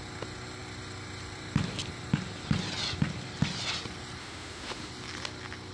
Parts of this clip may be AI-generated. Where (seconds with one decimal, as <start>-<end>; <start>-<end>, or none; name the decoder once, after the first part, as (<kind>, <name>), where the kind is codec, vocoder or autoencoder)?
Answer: 4.2-4.9 (autoencoder, DAC-VAE)